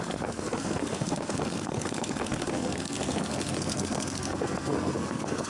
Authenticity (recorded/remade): remade